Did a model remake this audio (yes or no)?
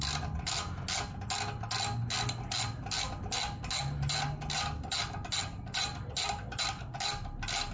no